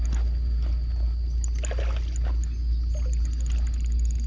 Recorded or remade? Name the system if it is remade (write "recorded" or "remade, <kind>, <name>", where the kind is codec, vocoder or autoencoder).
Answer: recorded